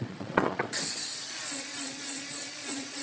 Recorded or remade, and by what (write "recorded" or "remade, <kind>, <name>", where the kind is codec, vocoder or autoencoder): remade, vocoder, Vocos